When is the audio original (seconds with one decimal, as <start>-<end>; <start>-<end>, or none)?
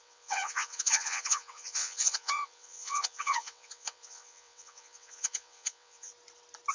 6.1-6.7